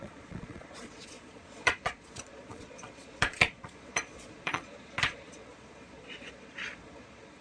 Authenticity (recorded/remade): remade